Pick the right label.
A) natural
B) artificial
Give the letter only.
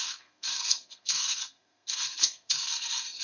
B